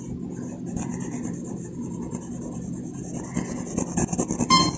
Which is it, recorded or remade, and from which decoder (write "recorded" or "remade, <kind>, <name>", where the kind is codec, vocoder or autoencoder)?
recorded